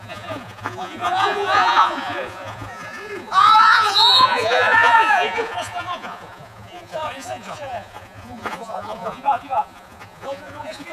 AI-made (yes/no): yes